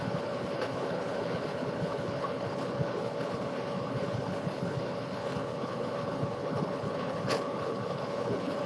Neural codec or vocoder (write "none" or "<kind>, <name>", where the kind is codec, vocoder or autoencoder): codec, HILCodec